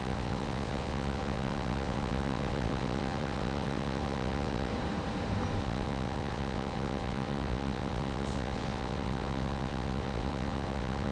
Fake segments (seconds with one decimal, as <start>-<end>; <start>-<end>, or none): 0.0-4.7; 5.6-11.1